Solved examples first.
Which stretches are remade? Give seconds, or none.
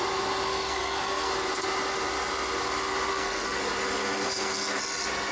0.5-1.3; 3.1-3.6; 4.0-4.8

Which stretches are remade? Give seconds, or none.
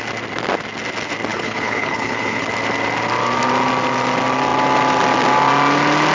1.3-2.5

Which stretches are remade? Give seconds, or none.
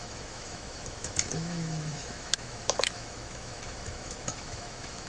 0.0-5.1